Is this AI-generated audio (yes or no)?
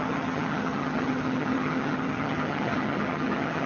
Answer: yes